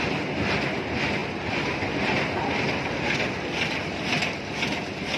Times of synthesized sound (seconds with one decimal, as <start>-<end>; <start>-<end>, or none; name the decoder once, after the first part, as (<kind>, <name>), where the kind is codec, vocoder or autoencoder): none